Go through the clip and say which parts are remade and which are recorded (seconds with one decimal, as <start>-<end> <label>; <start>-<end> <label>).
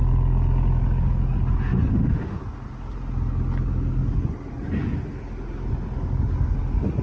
0.0-1.9 recorded; 1.9-2.4 remade; 2.4-7.0 recorded